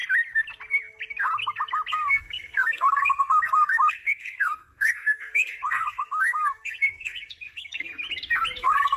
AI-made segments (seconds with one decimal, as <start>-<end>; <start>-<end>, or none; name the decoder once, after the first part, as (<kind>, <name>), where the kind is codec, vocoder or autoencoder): 1.9-7.9 (codec, SNAC); 8.6-9.0